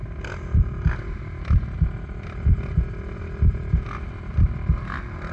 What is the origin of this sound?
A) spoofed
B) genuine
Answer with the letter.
B